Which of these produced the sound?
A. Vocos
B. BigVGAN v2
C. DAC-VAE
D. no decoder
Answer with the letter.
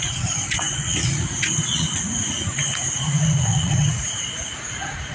A